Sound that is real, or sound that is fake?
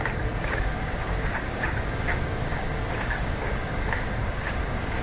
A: fake